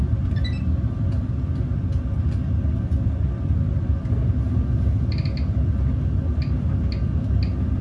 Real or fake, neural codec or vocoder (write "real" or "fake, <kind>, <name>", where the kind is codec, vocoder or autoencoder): real